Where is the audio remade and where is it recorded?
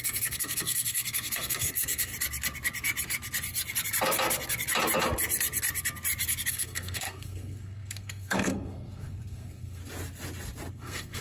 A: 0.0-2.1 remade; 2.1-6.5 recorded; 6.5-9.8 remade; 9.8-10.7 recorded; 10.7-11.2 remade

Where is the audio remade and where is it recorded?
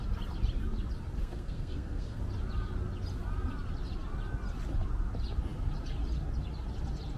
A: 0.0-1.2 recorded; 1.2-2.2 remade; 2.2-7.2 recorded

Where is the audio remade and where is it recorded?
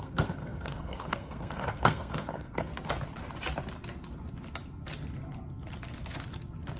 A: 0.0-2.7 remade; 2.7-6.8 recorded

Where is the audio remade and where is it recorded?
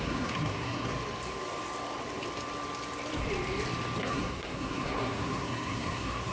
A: 0.0-0.9 remade; 0.9-4.0 recorded; 4.0-6.3 remade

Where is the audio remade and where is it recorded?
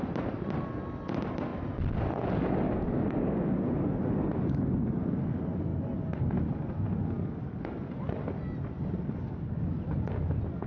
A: 0.0-10.7 recorded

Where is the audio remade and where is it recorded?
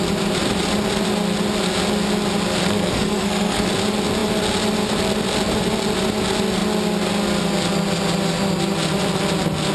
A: 0.0-2.6 recorded; 2.6-3.6 remade; 3.6-9.7 recorded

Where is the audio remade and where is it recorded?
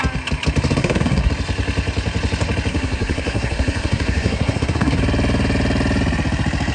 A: 0.0-0.8 recorded; 0.8-1.3 remade; 1.3-2.7 recorded; 2.7-5.0 remade; 5.0-6.7 recorded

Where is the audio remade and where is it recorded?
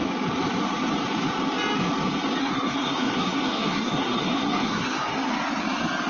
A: 0.0-2.4 recorded; 2.4-5.3 remade; 5.3-6.1 recorded